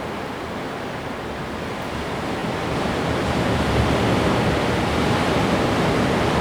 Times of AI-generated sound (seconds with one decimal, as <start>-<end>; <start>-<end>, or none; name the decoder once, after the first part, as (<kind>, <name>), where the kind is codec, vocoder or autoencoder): none